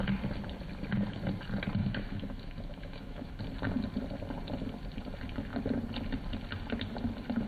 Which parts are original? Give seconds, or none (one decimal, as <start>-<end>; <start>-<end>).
0.0-1.8; 3.4-7.5